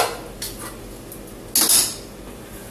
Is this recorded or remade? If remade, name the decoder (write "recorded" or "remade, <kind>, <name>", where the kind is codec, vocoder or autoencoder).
recorded